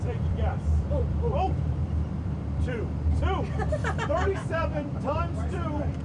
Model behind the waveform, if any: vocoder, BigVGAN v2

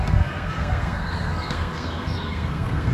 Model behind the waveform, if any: codec, SNAC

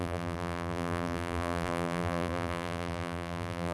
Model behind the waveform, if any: vocoder, BigVGAN v2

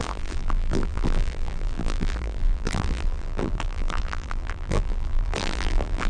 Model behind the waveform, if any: vocoder, BigVGAN v2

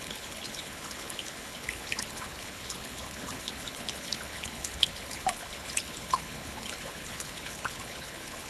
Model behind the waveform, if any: codec, HILCodec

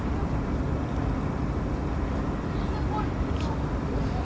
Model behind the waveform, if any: none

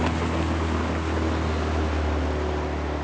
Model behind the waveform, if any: none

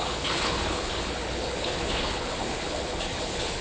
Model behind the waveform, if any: codec, HILCodec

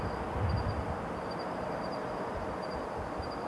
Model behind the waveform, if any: none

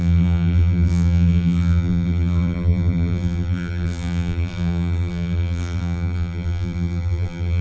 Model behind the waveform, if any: vocoder, BigVGAN v2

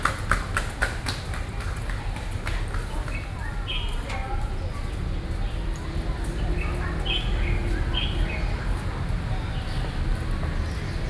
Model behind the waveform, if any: none